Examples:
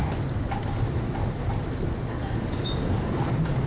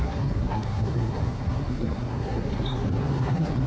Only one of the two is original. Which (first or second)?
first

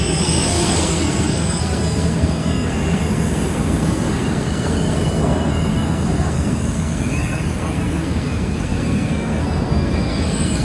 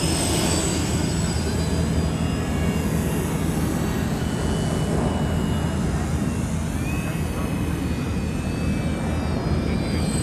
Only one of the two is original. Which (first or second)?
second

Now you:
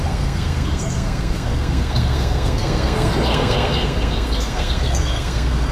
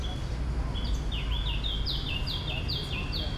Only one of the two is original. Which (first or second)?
second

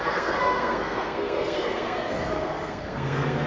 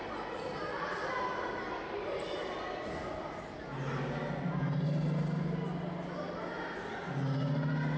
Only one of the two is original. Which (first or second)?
second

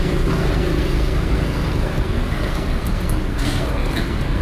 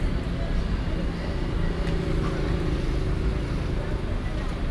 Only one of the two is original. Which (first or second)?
second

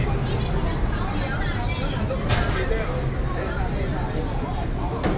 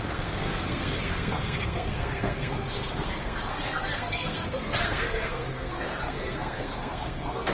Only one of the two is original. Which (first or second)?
first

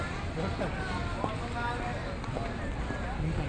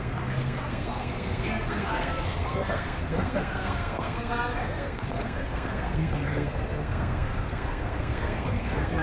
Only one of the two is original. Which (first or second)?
first